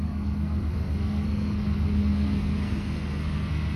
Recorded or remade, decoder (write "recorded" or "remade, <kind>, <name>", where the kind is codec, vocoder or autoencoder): remade, codec, SNAC